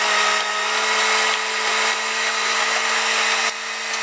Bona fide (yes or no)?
yes